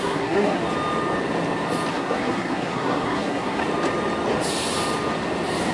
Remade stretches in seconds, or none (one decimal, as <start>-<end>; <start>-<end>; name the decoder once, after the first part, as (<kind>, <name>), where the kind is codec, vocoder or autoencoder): 0.0-0.6 (codec, SNAC); 1.9-3.6